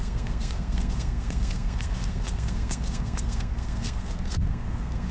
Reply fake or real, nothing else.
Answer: fake